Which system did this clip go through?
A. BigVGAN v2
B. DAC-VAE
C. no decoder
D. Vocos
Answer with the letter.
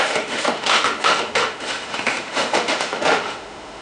B